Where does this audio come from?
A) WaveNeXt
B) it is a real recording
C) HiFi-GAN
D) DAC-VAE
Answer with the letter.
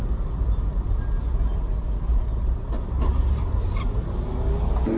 B